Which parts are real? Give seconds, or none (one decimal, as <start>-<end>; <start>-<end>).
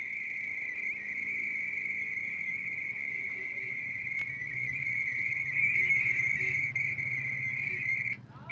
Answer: 0.0-2.2; 3.8-4.4; 5.3-8.5